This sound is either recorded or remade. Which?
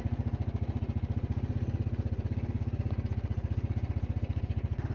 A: recorded